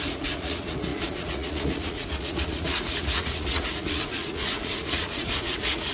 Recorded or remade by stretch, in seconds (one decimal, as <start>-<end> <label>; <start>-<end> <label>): 0.0-5.9 remade